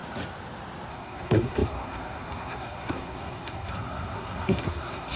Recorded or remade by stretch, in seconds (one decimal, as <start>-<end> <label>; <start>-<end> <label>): 0.0-0.9 recorded; 0.9-5.2 remade